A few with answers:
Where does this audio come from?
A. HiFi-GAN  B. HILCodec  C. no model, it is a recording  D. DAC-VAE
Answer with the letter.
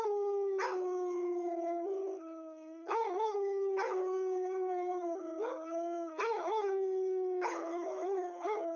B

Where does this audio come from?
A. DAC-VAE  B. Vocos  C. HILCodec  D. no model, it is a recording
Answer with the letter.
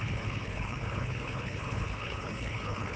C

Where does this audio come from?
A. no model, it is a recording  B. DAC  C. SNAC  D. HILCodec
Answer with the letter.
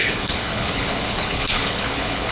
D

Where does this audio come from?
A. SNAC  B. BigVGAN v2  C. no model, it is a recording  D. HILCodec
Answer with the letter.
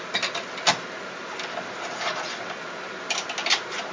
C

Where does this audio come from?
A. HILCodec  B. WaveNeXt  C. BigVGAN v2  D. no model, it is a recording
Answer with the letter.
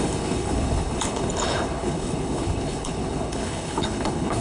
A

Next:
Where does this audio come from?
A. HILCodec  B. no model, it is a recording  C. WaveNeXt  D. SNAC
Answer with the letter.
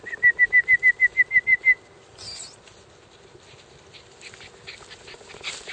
B